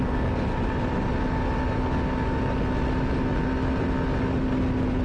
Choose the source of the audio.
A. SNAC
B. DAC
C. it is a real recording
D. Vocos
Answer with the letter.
C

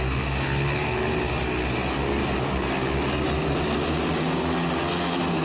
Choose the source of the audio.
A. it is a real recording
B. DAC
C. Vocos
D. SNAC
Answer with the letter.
A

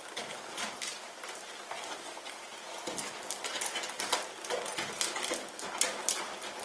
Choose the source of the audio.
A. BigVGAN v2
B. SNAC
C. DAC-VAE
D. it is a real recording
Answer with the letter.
D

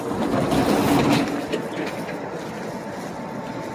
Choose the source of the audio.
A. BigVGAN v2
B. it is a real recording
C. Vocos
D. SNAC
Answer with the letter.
B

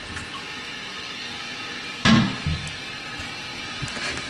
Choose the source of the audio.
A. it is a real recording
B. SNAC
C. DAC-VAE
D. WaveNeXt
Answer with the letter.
A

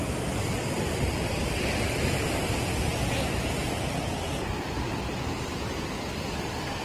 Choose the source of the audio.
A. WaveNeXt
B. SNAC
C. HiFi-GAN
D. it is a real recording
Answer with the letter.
D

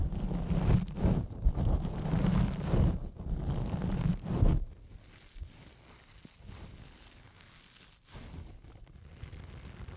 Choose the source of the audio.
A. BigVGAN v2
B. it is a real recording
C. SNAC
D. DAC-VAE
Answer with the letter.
B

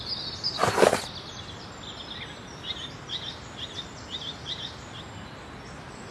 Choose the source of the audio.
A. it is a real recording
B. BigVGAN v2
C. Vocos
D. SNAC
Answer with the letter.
A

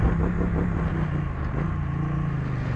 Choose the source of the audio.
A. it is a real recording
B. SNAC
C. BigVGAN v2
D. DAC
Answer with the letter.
A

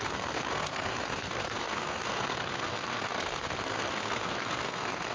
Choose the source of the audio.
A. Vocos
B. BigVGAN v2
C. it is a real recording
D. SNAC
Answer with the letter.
D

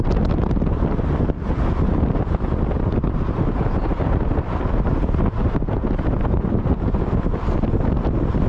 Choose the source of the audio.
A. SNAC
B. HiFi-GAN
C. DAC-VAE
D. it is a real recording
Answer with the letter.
D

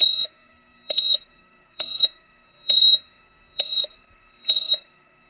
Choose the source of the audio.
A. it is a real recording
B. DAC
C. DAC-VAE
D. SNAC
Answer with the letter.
D